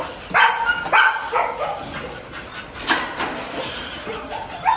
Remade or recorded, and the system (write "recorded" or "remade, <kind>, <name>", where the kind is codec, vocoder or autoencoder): recorded